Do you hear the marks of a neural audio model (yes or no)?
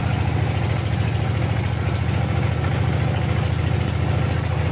no